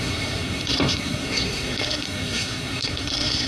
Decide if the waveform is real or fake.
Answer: fake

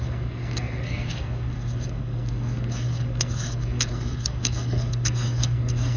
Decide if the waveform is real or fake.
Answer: fake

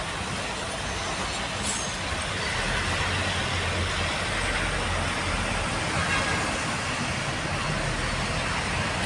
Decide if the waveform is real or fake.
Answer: real